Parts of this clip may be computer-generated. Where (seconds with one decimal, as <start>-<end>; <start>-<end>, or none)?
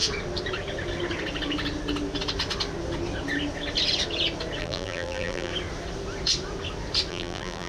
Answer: 4.6-5.5; 7.1-7.7